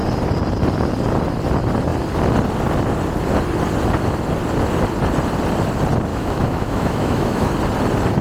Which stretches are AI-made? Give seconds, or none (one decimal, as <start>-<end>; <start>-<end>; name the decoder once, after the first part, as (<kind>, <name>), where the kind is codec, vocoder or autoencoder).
6.1-7.5 (autoencoder, DAC-VAE)